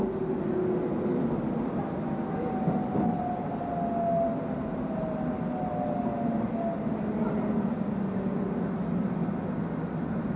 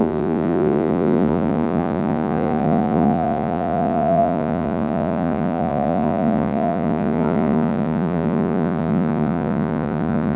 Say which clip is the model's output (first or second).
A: second